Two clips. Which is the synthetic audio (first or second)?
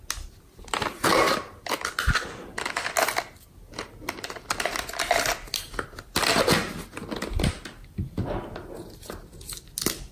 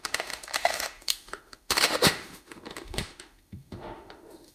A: second